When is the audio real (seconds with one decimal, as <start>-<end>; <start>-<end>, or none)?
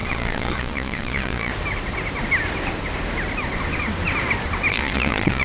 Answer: 1.5-4.7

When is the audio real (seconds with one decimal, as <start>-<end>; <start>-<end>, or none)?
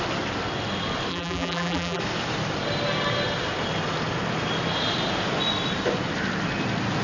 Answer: 0.0-1.1; 2.0-7.0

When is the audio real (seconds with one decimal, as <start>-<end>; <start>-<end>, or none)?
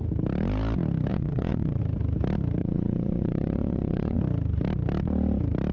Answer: 0.0-1.1; 1.8-2.6; 4.2-5.7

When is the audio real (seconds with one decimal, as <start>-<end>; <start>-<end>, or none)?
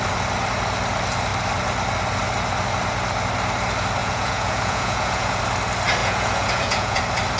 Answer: 0.0-4.0; 5.4-6.0; 7.0-7.4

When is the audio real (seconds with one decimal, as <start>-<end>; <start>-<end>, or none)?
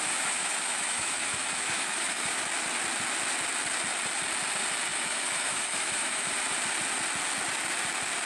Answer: 0.0-0.4; 2.5-4.9; 6.3-8.3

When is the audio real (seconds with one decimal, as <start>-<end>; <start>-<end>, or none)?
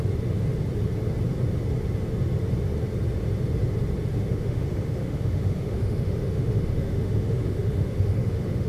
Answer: 0.0-4.1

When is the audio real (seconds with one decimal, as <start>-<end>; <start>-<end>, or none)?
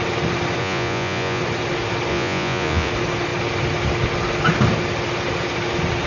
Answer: 0.0-0.6; 1.4-2.1; 2.9-6.1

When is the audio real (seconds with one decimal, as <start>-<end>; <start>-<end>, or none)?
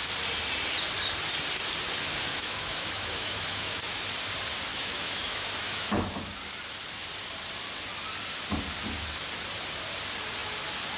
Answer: 0.0-2.3; 4.0-4.7; 6.2-11.0